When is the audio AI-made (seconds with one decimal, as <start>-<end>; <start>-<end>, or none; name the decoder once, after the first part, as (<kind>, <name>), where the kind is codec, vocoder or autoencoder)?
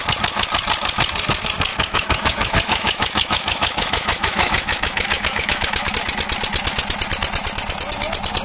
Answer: 1.7-5.9 (autoencoder, DAC-VAE)